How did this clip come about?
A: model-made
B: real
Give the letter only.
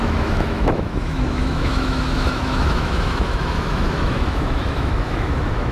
A